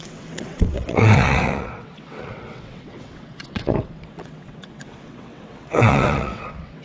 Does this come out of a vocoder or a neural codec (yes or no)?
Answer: yes